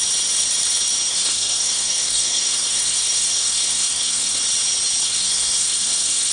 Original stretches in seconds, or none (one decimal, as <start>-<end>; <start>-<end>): 0.0-1.1; 4.4-5.0